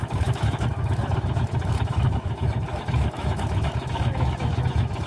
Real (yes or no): no